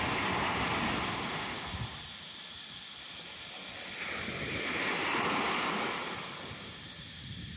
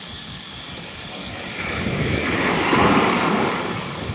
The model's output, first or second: second